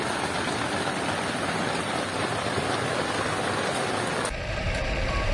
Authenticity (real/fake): real